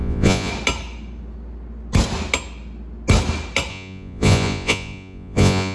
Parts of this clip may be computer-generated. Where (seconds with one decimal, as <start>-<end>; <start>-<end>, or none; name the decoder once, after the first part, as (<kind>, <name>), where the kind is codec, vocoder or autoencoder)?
0.0-0.5 (vocoder, Vocos); 3.7-5.7